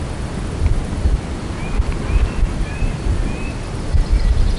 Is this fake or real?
real